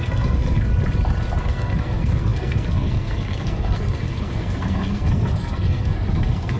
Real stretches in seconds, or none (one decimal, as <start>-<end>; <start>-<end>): 0.7-1.4